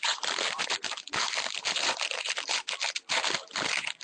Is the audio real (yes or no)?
yes